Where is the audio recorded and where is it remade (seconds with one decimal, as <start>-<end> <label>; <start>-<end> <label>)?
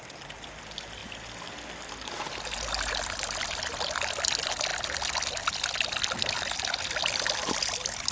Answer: 0.0-8.1 recorded